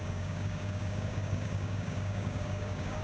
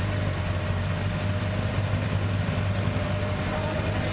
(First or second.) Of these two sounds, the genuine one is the second